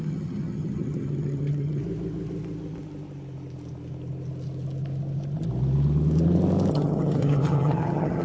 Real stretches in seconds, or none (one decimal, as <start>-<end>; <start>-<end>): 1.8-6.7